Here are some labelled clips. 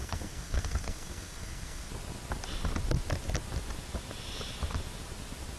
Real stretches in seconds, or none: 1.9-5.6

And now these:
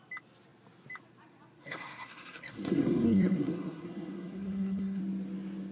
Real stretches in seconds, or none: 0.0-1.6; 5.0-5.7

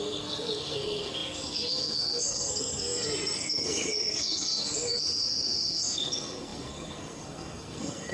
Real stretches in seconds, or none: none

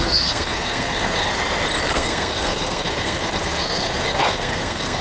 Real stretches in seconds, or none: 1.3-1.9

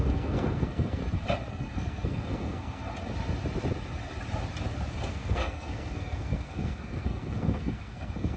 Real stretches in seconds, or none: 1.0-1.5; 2.8-5.1